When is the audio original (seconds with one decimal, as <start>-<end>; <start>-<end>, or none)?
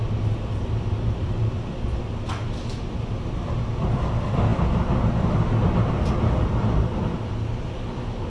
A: 0.0-8.3